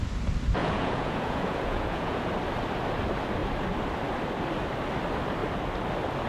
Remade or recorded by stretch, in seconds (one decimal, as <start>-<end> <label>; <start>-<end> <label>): 0.0-0.6 recorded; 0.6-2.3 remade; 2.3-6.3 recorded